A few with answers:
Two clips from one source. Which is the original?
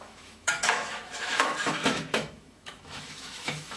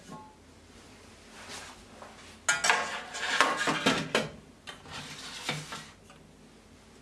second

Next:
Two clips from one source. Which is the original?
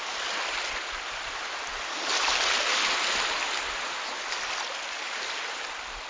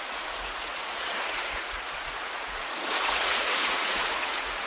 first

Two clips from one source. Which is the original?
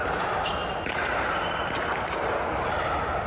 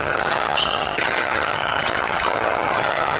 first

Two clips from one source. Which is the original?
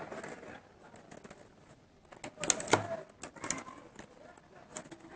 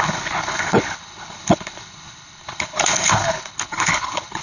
first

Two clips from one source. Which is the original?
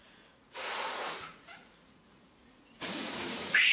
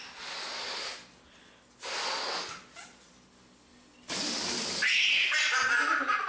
second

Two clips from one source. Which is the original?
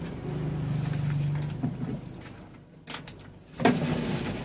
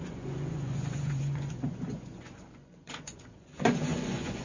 first